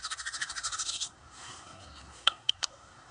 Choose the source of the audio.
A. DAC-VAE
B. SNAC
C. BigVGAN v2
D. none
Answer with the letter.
B